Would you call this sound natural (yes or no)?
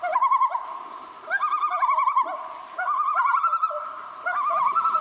no